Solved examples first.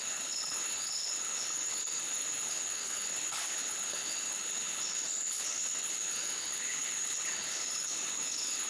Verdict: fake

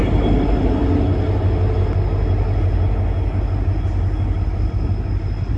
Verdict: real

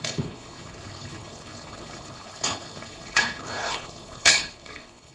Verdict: fake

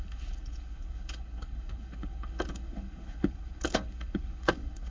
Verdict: fake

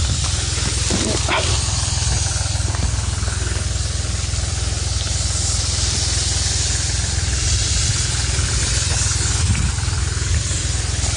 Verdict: real